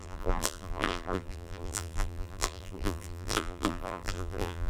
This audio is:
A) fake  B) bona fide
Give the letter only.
A